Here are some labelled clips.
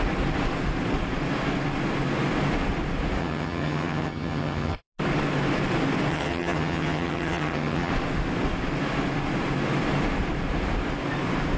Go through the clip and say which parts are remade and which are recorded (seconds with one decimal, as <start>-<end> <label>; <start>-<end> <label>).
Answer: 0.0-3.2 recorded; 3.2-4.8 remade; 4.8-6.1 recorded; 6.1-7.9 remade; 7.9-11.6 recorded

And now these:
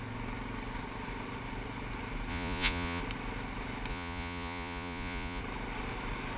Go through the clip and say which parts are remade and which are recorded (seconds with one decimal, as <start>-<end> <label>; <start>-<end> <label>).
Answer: 0.0-2.3 recorded; 2.3-3.0 remade; 3.0-3.9 recorded; 3.9-5.4 remade; 5.4-6.4 recorded

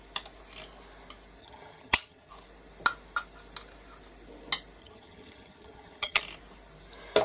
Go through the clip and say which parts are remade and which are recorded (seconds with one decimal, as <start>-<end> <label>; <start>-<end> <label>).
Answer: 0.0-1.4 recorded; 1.4-2.3 remade; 2.3-4.8 recorded; 4.8-6.2 remade; 6.2-7.2 recorded

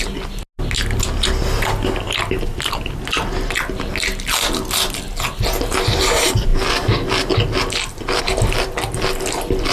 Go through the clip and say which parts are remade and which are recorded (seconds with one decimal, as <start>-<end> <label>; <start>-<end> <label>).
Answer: 0.0-9.7 recorded

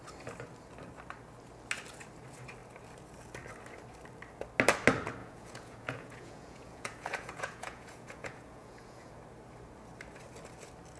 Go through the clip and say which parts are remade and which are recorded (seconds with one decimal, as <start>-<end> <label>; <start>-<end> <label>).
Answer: 0.0-5.2 recorded; 5.2-9.2 remade; 9.2-11.0 recorded

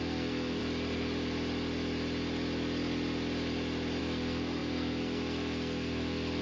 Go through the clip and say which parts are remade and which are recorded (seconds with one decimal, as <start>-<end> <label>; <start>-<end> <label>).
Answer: 0.0-0.6 remade; 0.6-4.0 recorded; 4.0-6.4 remade

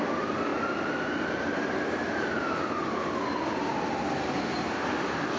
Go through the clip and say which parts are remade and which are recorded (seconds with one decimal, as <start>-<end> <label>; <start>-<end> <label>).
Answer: 0.0-0.5 recorded; 0.5-1.9 remade; 1.9-5.4 recorded

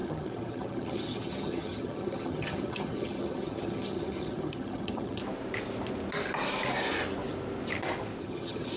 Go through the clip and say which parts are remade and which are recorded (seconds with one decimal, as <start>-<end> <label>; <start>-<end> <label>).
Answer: 0.0-5.2 remade; 5.2-8.2 recorded; 8.2-8.8 remade